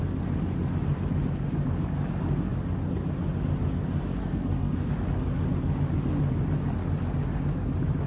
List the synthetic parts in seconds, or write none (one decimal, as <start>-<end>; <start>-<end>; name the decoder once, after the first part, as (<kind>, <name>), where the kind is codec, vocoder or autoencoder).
4.2-4.9 (codec, SNAC)